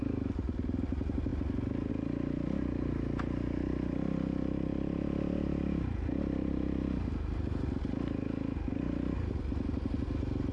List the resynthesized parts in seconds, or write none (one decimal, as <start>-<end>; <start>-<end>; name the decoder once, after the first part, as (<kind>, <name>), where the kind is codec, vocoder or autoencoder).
none